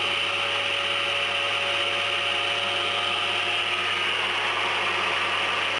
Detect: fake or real real